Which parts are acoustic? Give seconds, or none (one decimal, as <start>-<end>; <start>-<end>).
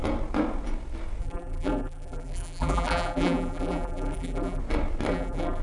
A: 0.0-1.2; 4.6-5.1